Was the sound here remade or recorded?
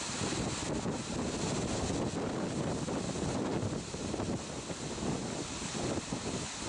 recorded